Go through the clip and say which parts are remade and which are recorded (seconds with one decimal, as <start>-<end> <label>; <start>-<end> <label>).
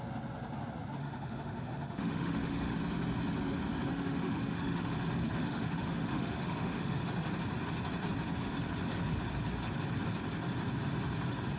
0.0-1.0 recorded; 1.0-2.8 remade; 2.8-3.9 recorded; 3.9-4.9 remade; 4.9-5.4 recorded; 5.4-7.0 remade; 7.0-11.6 recorded